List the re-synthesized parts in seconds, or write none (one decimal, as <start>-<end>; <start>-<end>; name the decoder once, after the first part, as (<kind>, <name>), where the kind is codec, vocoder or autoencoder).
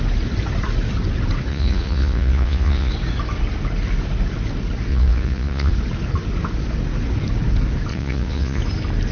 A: 1.5-2.9 (vocoder, Vocos); 4.9-5.7; 7.9-8.6